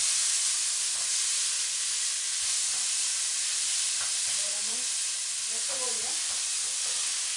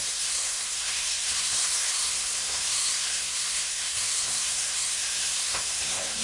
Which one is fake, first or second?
second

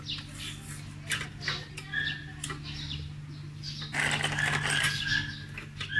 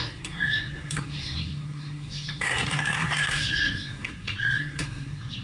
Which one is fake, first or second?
second